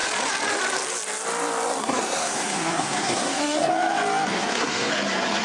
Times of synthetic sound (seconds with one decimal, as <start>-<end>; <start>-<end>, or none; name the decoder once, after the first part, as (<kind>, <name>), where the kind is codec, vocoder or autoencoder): 1.8-3.7 (codec, SNAC); 4.3-4.9